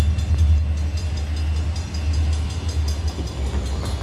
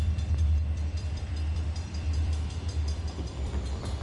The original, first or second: first